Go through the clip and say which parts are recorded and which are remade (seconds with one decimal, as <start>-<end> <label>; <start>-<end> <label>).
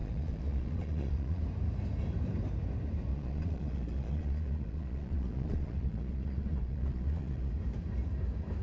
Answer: 0.0-1.4 remade; 1.4-3.1 recorded; 3.1-7.5 remade; 7.5-8.6 recorded